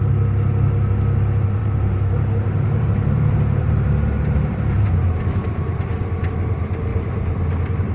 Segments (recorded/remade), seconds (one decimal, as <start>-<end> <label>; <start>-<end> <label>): 0.0-1.6 recorded; 1.6-6.3 remade; 6.3-7.9 recorded

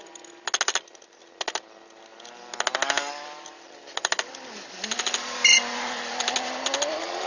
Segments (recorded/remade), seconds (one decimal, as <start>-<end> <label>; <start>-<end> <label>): 0.0-7.3 recorded